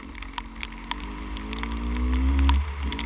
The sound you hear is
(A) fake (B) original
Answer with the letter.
B